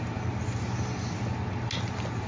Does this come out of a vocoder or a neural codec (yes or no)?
no